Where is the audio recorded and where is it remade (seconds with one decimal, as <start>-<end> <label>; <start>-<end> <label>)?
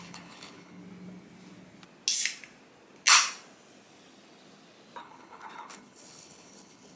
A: 0.0-0.8 remade; 0.8-5.0 recorded; 5.0-7.0 remade